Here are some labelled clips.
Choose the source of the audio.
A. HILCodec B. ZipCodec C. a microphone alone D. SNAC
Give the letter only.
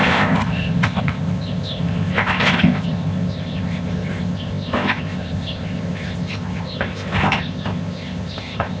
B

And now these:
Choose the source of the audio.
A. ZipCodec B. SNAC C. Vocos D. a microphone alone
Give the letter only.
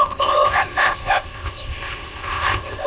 A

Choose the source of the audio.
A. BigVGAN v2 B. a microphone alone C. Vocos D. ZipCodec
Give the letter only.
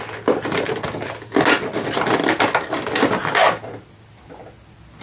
B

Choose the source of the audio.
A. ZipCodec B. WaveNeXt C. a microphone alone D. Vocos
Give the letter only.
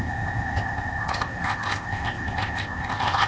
A